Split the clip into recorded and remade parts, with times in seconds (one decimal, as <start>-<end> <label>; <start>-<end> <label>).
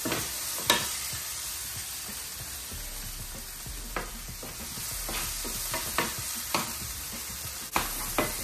0.0-8.4 recorded